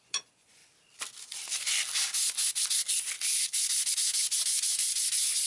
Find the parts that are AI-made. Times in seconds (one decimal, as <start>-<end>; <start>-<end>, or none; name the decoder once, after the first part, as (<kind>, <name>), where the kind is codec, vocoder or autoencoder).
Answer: 0.0-0.6 (vocoder, Vocos); 3.9-5.5